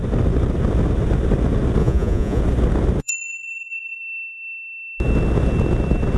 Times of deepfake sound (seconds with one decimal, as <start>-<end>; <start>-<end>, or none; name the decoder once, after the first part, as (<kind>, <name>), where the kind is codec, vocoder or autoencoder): 1.8-2.4 (vocoder, Vocos); 3.0-4.0